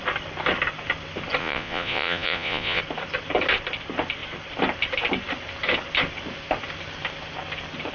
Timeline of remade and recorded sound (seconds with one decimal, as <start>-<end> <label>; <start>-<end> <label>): 0.0-1.4 recorded; 1.4-2.8 remade; 2.8-7.9 recorded